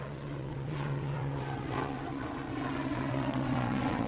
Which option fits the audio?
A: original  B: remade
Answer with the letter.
B